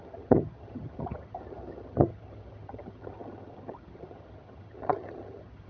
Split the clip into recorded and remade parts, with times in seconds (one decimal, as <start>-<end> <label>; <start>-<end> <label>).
0.0-5.7 remade